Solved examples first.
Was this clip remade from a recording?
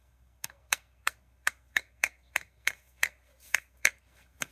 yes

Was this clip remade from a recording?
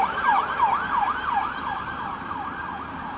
no